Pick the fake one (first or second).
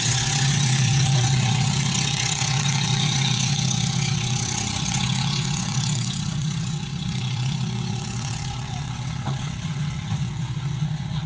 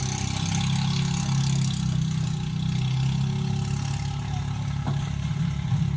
first